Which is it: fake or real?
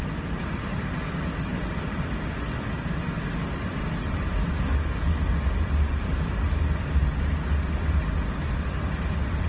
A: real